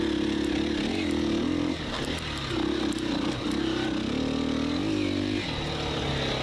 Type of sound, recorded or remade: recorded